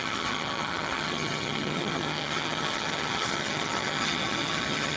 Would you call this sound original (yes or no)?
no